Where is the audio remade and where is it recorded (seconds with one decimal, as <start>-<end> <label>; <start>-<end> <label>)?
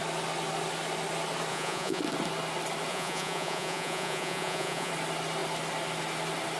0.0-1.5 recorded; 1.5-2.0 remade; 2.0-2.9 recorded; 2.9-4.9 remade; 4.9-6.6 recorded